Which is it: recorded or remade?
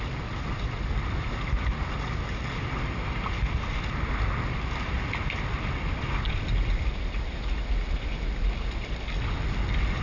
recorded